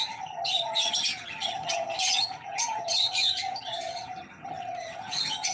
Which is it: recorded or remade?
remade